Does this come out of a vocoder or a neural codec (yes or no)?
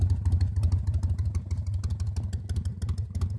no